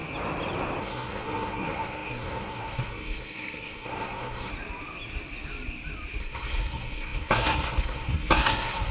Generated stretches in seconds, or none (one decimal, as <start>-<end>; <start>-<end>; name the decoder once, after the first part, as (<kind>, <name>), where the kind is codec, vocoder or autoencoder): 0.8-4.5 (codec, SNAC); 6.2-8.9